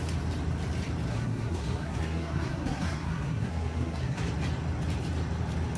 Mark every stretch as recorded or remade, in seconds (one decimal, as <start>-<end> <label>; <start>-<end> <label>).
0.0-1.1 recorded; 1.1-4.3 remade; 4.3-5.8 recorded